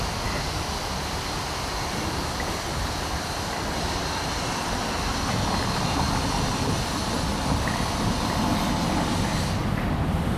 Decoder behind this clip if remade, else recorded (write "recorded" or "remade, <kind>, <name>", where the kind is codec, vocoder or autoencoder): remade, vocoder, BigVGAN v2